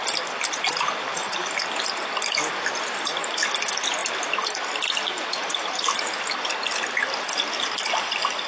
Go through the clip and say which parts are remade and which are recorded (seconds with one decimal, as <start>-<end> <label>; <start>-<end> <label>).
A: 0.0-8.5 recorded

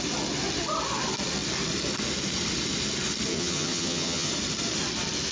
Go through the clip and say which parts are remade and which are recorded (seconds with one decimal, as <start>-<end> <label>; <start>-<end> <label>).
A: 0.0-3.3 recorded; 3.3-4.3 remade; 4.3-5.3 recorded

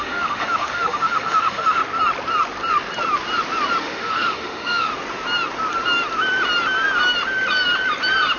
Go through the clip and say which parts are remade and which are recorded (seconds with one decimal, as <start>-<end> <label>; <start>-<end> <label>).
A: 0.0-1.8 remade; 1.8-3.8 recorded; 3.8-4.9 remade; 4.9-8.4 recorded

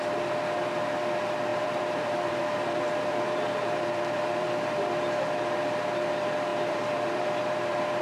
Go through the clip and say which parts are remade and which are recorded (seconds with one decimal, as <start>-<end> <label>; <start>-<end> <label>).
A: 0.0-1.5 recorded; 1.5-4.9 remade; 4.9-6.5 recorded; 6.5-8.0 remade

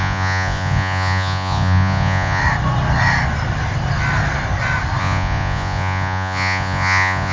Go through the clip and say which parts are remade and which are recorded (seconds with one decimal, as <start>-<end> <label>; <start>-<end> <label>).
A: 0.0-2.4 remade; 2.4-5.0 recorded; 5.0-7.3 remade